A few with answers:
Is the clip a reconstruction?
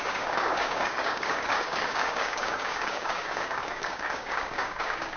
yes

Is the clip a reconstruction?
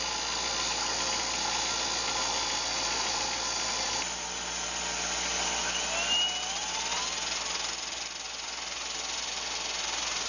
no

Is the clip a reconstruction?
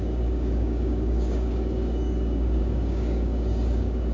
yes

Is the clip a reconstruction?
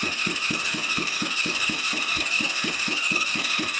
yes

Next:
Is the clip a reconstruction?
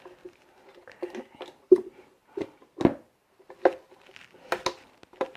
no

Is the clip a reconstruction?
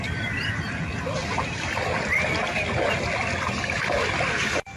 no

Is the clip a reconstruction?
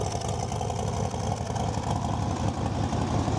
no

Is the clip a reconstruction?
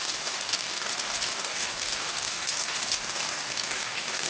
yes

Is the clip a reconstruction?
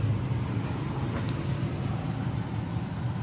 no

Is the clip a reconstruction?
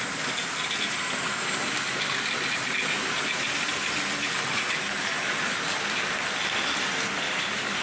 no